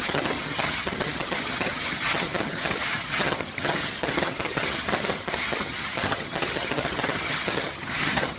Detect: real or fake fake